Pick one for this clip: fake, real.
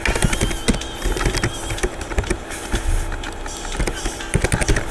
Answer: real